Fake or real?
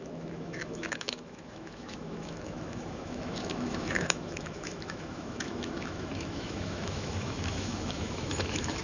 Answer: fake